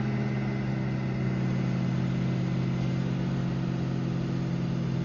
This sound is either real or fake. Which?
real